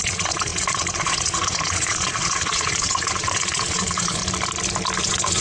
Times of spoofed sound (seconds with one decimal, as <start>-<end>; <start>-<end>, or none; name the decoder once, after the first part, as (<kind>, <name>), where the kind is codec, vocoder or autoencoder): 0.0-4.2 (vocoder, Vocos); 5.0-5.4